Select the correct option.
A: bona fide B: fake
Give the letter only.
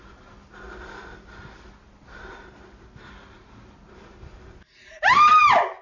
A